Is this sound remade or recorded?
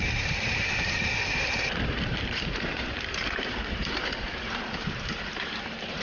remade